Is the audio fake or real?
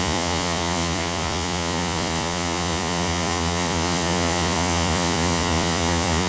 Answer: fake